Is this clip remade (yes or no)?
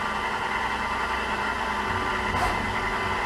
no